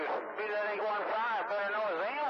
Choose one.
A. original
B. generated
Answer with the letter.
A